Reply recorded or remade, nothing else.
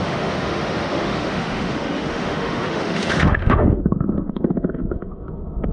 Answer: remade